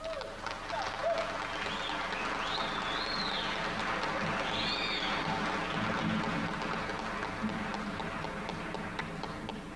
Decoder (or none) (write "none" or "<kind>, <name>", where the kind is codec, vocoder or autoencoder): none